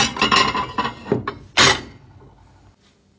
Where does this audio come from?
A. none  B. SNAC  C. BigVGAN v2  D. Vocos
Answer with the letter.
A